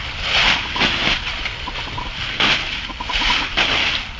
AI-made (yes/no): no